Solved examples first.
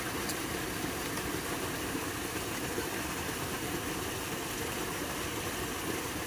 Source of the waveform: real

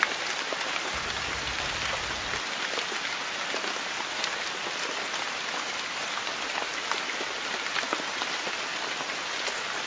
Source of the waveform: real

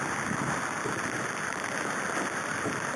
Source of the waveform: real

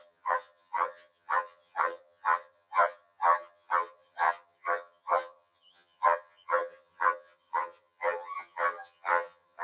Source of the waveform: fake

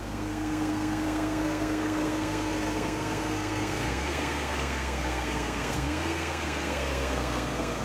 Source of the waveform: fake